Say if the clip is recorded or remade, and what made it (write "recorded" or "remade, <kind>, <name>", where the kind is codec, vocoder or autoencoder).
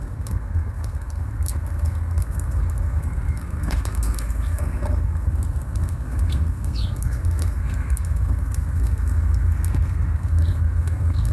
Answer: remade, codec, SNAC